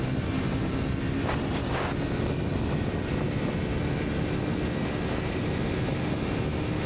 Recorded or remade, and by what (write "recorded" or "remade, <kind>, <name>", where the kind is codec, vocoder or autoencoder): recorded